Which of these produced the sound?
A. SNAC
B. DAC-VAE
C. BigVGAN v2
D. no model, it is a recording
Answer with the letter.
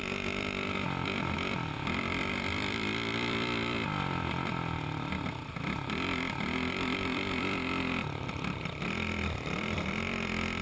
C